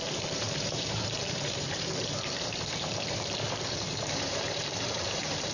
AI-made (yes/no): yes